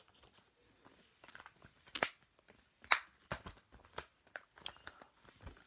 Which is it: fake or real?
real